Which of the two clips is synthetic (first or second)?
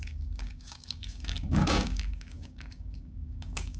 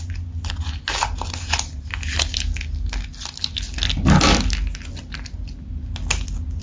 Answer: first